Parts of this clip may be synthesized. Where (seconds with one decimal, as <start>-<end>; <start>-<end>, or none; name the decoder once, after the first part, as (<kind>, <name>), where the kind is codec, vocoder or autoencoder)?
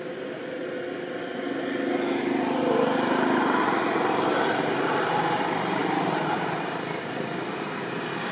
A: 5.8-7.6 (vocoder, BigVGAN v2)